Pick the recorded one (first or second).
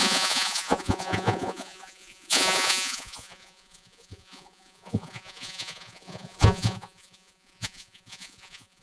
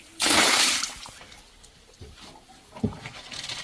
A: second